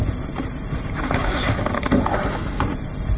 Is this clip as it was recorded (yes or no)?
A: yes